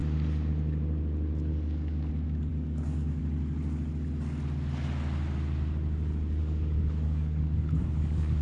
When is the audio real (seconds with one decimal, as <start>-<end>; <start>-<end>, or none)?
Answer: 0.0-1.5; 2.1-2.5; 3.2-6.4